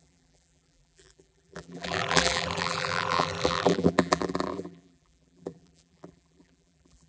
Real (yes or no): no